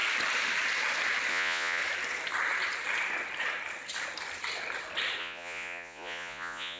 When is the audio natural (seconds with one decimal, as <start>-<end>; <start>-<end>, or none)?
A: 0.0-1.3; 1.8-5.2

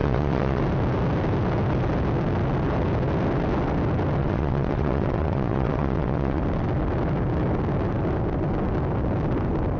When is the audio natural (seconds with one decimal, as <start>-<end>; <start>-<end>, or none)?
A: 0.6-4.2; 6.4-9.8

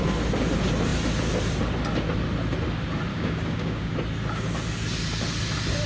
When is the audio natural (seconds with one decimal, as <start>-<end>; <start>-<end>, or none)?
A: 0.0-3.1; 3.9-5.9

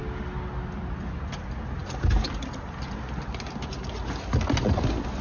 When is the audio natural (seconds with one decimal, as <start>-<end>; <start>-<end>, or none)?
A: 0.0-5.2

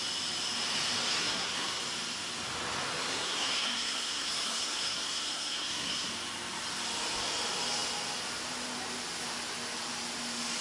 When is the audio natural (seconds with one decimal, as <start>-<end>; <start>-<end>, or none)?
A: 0.0-1.1; 1.8-3.1; 6.1-10.6